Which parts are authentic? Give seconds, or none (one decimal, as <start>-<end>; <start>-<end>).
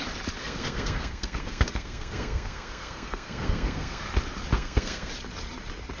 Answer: 0.0-0.4; 4.0-4.5; 5.1-6.0